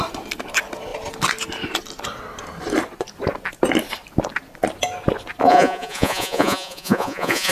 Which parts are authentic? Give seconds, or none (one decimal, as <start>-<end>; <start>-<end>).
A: 0.0-5.4